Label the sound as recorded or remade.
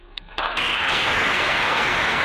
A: remade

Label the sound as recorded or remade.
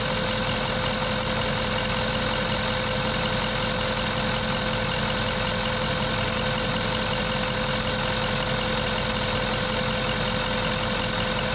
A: recorded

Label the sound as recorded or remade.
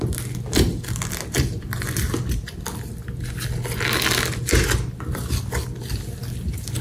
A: recorded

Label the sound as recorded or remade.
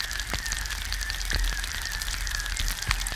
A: recorded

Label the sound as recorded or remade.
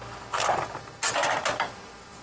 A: recorded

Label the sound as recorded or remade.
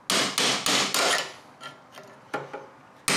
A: recorded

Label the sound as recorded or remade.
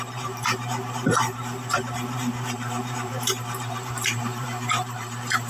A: remade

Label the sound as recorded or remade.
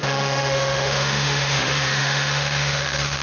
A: remade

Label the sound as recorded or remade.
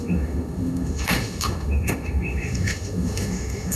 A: remade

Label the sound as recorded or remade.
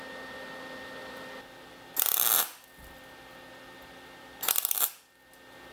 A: recorded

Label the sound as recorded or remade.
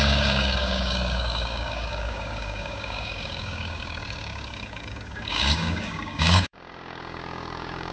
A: remade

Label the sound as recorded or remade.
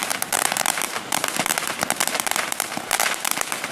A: remade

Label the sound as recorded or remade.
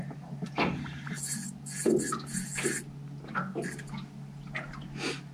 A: recorded